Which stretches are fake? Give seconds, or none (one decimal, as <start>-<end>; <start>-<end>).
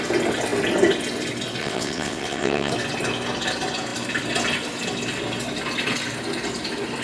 1.6-2.7